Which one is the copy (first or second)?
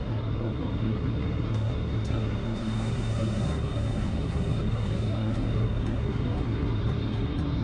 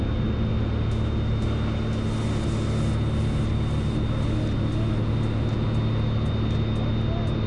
first